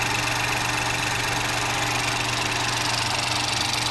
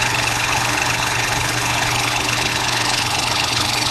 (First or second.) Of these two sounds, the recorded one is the first